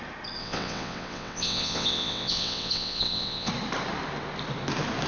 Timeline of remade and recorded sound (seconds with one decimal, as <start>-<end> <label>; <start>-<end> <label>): 0.0-0.4 recorded; 0.4-3.5 remade; 3.5-5.1 recorded